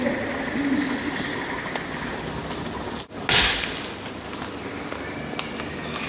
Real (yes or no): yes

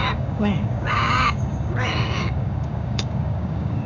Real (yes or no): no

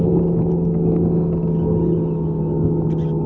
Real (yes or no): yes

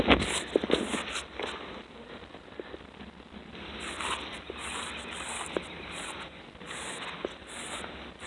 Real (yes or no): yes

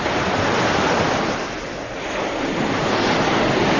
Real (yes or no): yes